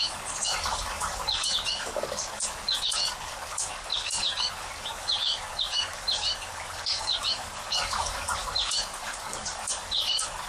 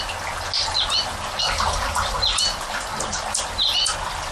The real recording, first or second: second